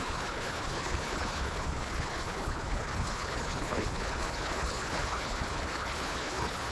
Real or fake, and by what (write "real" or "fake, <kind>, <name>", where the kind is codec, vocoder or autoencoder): fake, codec, HILCodec